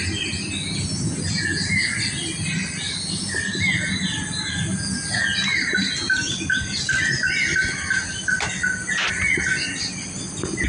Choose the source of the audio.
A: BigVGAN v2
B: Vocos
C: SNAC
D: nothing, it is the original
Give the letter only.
D